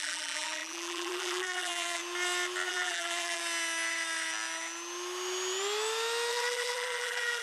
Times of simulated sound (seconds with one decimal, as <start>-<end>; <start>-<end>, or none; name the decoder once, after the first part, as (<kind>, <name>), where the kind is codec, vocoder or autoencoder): 0.0-2.0 (vocoder, BigVGAN v2); 2.7-3.4; 6.3-7.4